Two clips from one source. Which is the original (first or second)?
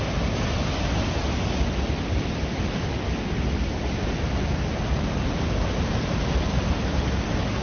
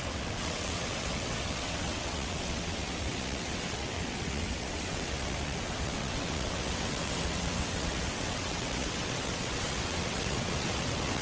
first